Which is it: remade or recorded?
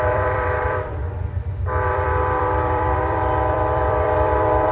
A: remade